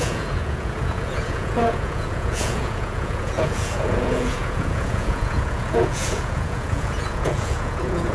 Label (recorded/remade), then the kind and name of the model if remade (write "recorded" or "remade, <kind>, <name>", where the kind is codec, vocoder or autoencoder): remade, vocoder, Vocos